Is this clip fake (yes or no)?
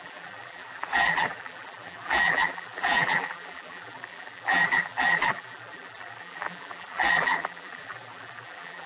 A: yes